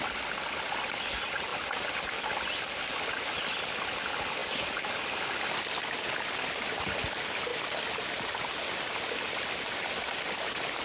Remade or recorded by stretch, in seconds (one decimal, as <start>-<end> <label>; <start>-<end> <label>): 0.0-4.4 recorded; 4.4-6.1 remade; 6.1-10.8 recorded